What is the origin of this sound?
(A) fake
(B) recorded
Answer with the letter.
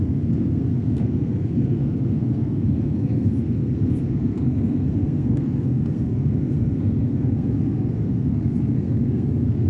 A